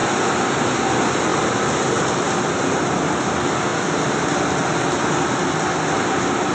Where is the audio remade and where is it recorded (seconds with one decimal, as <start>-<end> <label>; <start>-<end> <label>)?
0.0-6.5 recorded